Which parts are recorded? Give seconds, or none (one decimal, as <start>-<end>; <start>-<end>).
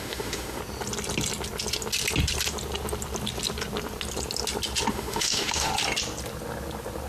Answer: 0.6-4.9; 5.7-7.1